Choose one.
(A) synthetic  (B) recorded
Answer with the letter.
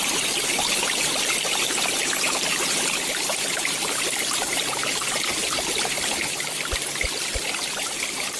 B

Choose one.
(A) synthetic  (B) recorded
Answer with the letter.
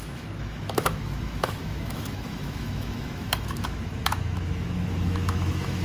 A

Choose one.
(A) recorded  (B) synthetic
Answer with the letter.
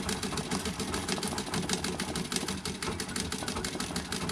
A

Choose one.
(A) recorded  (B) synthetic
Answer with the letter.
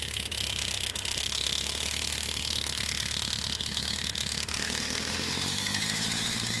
B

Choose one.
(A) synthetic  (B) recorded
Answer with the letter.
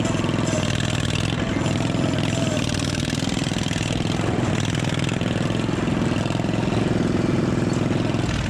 B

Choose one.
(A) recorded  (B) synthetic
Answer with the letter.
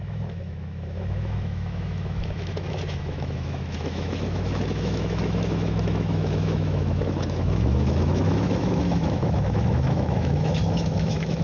B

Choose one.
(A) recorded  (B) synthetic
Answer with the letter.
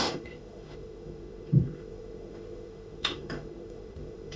B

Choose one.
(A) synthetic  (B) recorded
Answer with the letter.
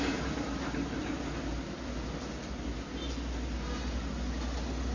B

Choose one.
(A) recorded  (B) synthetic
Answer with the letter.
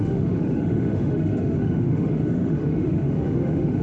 B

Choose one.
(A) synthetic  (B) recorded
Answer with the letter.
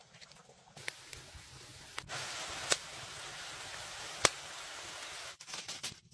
B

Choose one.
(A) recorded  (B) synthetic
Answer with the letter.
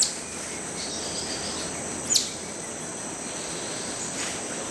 A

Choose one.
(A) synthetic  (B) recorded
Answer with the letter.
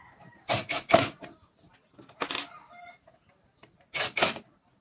B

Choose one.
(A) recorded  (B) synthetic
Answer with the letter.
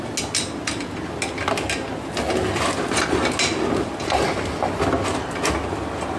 A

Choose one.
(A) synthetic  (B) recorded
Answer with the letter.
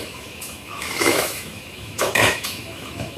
A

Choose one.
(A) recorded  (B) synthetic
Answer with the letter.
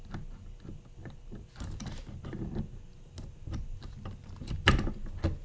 A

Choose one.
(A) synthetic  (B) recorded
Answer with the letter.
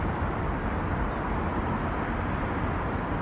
B